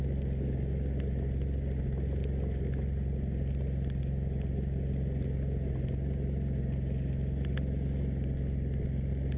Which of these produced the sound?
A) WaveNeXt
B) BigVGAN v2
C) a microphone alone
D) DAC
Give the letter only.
C